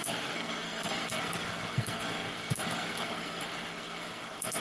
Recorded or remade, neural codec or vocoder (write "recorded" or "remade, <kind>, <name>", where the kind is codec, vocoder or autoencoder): remade, codec, SNAC